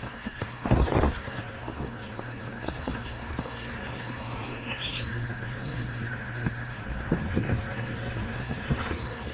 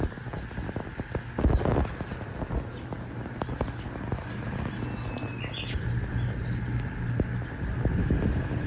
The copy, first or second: first